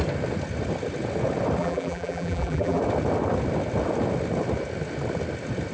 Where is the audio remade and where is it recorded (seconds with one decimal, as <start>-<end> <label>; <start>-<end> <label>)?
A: 0.0-1.6 recorded; 1.6-2.8 remade; 2.8-5.7 recorded

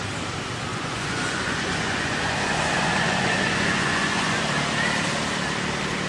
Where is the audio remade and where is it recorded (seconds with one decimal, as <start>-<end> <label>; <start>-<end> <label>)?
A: 0.0-0.7 recorded; 0.7-4.4 remade; 4.4-6.1 recorded

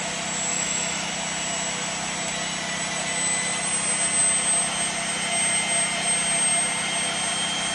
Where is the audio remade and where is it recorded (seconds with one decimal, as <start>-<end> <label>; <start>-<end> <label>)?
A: 0.0-0.5 recorded; 0.5-1.1 remade; 1.1-7.7 recorded

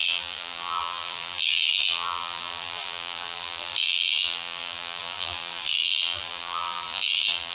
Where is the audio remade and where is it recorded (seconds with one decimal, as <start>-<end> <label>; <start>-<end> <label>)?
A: 0.0-7.5 remade

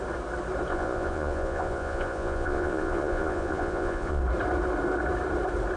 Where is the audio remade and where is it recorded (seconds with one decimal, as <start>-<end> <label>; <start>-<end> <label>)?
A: 0.0-0.7 recorded; 0.7-4.2 remade; 4.2-5.8 recorded

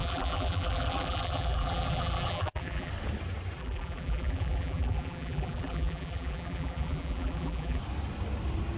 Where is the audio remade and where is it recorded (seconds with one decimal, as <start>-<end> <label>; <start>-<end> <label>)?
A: 0.0-2.9 remade; 2.9-3.6 recorded; 3.6-7.8 remade; 7.8-8.8 recorded